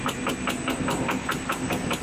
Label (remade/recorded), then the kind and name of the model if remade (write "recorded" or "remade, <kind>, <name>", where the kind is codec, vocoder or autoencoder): recorded